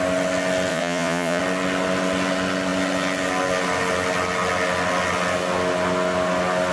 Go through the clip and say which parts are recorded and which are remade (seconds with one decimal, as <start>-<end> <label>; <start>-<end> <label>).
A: 0.0-0.7 recorded; 0.7-1.4 remade; 1.4-6.7 recorded